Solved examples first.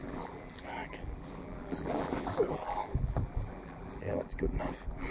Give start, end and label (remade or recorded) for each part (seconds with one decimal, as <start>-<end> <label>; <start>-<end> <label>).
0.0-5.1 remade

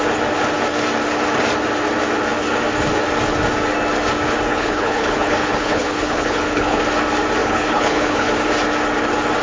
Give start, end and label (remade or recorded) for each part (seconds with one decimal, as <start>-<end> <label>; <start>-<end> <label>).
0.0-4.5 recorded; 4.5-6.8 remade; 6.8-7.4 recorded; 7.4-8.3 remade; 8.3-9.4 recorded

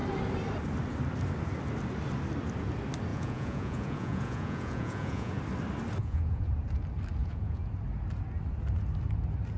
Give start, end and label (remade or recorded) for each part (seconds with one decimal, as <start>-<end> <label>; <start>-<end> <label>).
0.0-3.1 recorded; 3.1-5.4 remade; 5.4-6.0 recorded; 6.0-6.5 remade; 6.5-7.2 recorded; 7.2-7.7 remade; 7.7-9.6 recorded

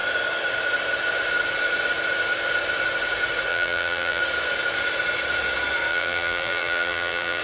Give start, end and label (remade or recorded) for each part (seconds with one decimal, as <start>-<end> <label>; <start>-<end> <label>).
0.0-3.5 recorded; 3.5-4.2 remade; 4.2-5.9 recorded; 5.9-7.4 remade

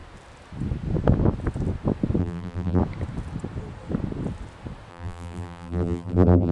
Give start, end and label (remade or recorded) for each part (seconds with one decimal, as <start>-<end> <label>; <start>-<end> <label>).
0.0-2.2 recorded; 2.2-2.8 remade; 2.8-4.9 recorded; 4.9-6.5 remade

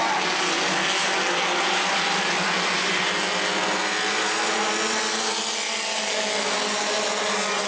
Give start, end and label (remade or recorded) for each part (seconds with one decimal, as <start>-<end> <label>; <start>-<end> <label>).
0.0-7.7 recorded